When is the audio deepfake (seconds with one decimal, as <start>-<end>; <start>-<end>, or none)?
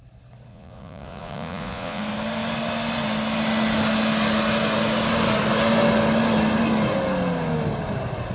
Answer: 0.5-2.0